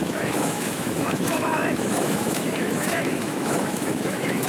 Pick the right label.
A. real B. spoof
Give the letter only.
B